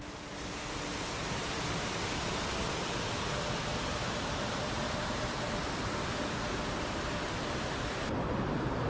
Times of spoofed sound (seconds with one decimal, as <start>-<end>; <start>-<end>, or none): 4.0-5.3